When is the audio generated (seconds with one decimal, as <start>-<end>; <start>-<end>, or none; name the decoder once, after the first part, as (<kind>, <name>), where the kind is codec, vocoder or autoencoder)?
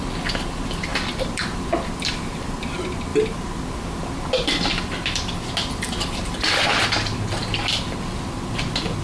none